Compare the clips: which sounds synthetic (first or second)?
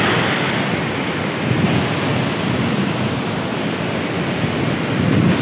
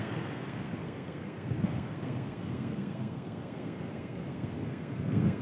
second